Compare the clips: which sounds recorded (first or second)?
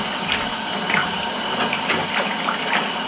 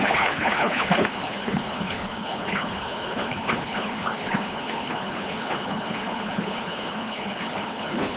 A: first